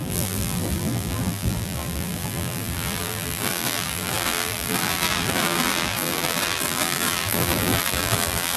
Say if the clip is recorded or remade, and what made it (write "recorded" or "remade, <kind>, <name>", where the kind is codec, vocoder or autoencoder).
remade, vocoder, BigVGAN v2